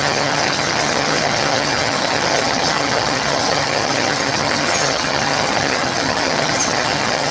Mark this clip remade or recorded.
remade